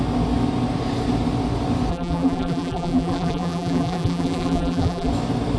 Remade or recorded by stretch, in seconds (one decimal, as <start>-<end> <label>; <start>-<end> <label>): 0.0-1.9 recorded; 1.9-5.1 remade; 5.1-5.6 recorded